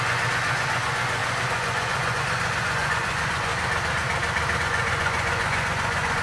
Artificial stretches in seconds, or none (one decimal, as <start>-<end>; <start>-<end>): 0.0-3.5; 4.6-6.2